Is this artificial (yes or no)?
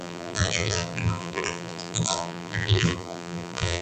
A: yes